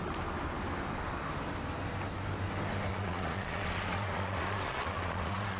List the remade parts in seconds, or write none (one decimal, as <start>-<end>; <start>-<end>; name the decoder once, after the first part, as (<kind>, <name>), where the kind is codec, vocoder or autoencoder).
2.9-5.6 (vocoder, Vocos)